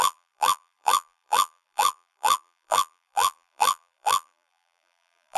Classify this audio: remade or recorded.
remade